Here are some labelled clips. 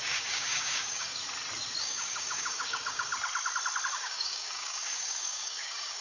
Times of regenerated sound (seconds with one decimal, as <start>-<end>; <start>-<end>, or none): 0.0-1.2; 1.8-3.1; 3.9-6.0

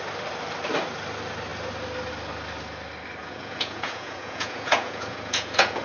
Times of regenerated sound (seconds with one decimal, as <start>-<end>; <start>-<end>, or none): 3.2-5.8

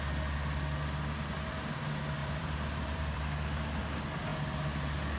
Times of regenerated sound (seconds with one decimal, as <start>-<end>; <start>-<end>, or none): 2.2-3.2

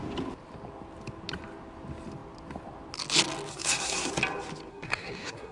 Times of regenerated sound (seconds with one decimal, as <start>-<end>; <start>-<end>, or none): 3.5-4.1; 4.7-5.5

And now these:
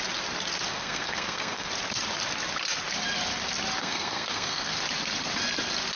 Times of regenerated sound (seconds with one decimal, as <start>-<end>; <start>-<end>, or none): 0.7-1.7; 3.8-4.7

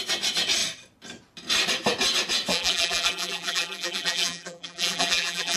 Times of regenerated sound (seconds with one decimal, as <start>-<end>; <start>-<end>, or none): 2.5-5.6

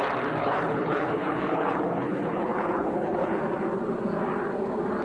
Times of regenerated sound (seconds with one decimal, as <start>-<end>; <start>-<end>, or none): 0.4-3.4

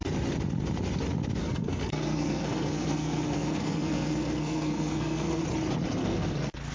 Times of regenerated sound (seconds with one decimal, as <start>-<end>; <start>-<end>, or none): 1.4-5.4; 6.0-6.7